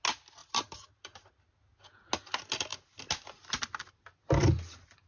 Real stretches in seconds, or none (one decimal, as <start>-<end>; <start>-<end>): 0.0-0.4; 1.3-5.1